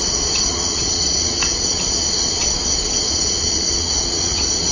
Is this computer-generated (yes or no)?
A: yes